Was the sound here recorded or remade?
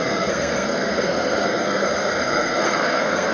remade